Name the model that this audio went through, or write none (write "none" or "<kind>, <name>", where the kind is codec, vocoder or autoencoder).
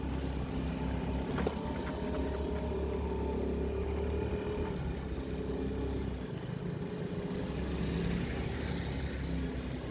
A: none